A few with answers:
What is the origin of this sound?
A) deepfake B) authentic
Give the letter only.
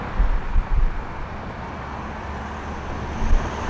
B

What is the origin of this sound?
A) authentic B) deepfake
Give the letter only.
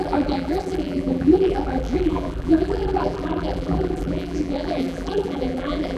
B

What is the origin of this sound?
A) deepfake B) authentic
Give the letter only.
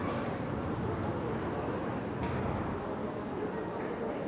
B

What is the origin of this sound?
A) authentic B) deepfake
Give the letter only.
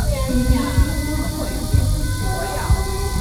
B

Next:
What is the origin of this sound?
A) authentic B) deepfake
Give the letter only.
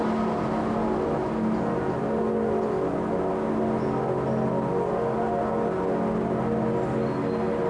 A